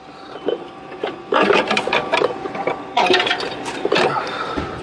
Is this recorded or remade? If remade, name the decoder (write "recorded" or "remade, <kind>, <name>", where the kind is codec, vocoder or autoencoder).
remade, vocoder, BigVGAN v2